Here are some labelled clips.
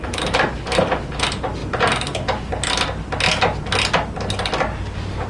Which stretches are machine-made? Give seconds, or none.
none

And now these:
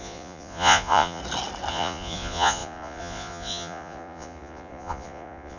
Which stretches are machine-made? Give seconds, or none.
0.0-1.2 (vocoder, Vocos); 1.7-5.6

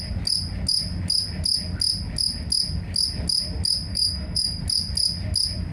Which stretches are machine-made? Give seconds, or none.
3.9-4.6 (codec, SNAC)

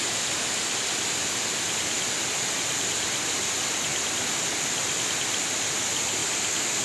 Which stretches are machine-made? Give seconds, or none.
none